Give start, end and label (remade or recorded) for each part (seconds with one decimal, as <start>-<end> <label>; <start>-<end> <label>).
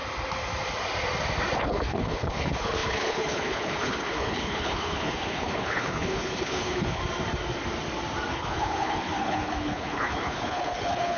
0.0-1.6 recorded; 1.6-7.0 remade; 7.0-8.3 recorded; 8.3-11.2 remade